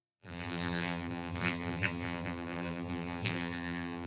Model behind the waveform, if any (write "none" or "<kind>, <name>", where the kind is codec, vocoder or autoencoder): vocoder, BigVGAN v2